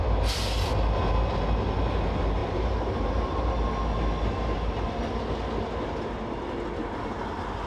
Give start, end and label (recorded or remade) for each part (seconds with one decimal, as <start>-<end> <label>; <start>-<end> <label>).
0.0-2.4 recorded; 2.4-3.5 remade; 3.5-7.7 recorded